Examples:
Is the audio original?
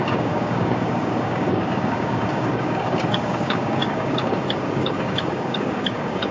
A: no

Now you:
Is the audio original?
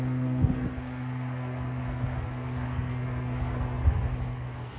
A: no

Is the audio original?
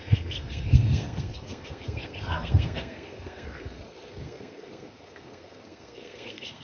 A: no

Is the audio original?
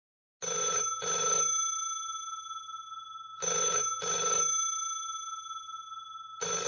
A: yes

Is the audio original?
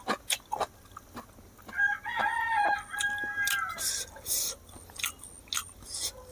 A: yes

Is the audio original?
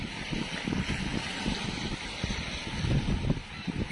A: no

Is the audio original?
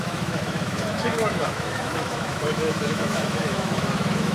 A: no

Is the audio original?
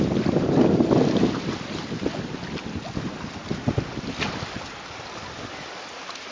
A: yes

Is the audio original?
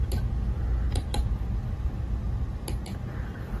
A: yes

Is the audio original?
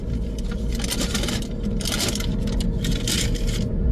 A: yes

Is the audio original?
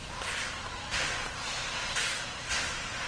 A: yes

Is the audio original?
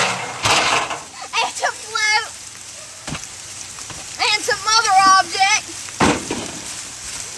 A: no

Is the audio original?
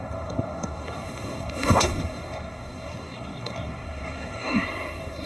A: no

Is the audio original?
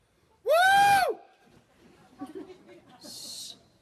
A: yes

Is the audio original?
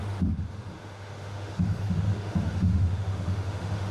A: no